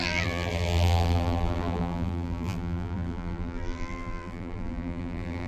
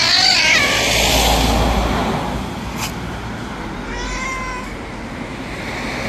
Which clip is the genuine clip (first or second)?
second